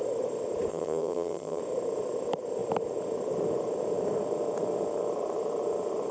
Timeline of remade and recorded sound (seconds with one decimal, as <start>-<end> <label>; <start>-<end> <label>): 0.0-0.7 recorded; 0.7-1.6 remade; 1.6-6.1 recorded